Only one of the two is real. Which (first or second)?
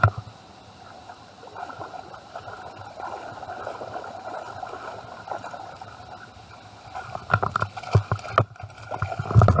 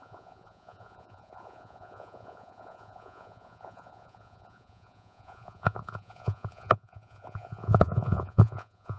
first